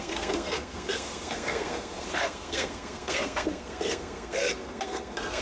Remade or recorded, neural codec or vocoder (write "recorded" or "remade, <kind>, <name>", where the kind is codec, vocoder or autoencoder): remade, codec, SNAC